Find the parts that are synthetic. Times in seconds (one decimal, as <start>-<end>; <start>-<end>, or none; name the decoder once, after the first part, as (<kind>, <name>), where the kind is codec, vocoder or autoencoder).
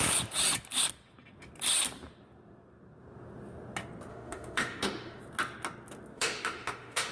4.1-5.2 (autoencoder, DAC-VAE); 6.1-7.1